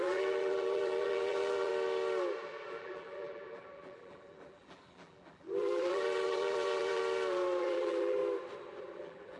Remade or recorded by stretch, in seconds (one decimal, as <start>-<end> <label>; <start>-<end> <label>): 0.0-1.7 remade; 1.7-2.7 recorded; 2.7-7.0 remade; 7.0-7.6 recorded; 7.6-8.2 remade; 8.2-8.8 recorded; 8.8-9.4 remade